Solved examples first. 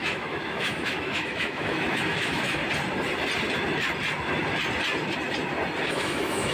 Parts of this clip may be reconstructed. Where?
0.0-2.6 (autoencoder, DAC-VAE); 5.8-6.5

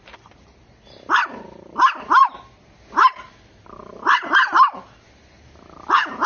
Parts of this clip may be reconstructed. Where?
none

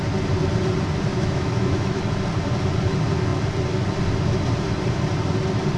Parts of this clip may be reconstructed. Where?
1.1-2.0 (autoencoder, DAC-VAE)

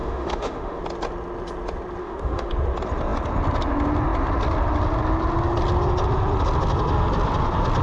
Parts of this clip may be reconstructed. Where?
0.0-0.8 (autoencoder, DAC-VAE); 2.0-2.5

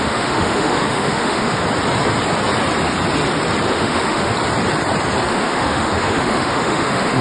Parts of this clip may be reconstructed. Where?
0.0-1.6 (autoencoder, DAC-VAE); 3.7-4.3; 5.3-7.2

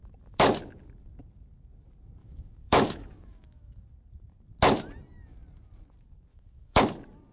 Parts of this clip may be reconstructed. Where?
2.2-3.8 (autoencoder, DAC-VAE); 6.3-6.8